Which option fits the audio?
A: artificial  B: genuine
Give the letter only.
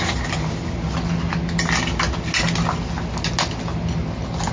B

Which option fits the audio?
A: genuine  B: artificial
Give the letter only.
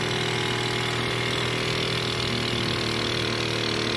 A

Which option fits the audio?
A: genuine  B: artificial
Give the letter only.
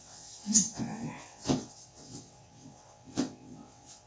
B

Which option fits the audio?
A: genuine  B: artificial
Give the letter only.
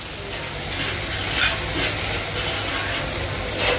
A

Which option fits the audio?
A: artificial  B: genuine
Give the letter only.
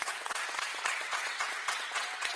A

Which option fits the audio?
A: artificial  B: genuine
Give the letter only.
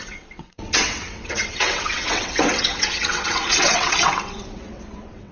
A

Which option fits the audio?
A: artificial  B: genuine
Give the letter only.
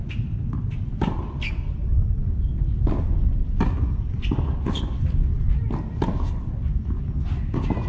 B